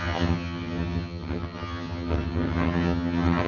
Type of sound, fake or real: fake